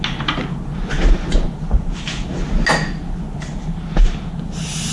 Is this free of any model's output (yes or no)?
yes